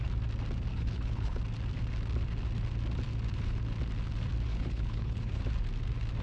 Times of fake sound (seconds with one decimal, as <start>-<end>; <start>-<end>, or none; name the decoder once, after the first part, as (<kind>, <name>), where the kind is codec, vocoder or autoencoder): 0.7-1.4 (codec, HILCodec); 4.5-5.4